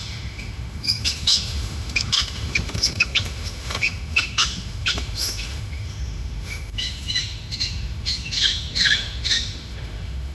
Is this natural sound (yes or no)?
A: no